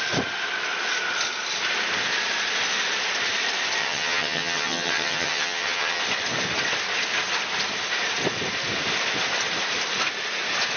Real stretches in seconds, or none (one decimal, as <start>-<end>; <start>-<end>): 0.0-3.8; 6.0-10.8